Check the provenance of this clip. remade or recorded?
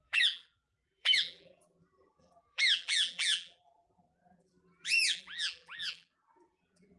remade